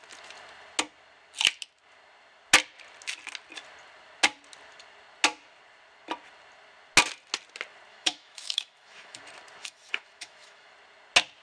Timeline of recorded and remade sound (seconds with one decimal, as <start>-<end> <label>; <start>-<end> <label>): 0.0-7.9 recorded; 7.9-9.2 remade; 9.2-9.6 recorded; 9.6-10.7 remade; 10.7-11.4 recorded